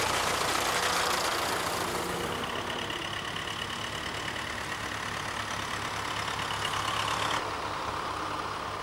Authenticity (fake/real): real